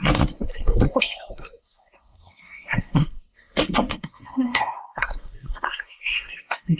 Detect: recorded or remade remade